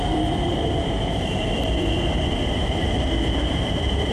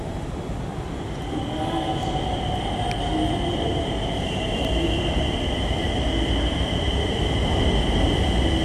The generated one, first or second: first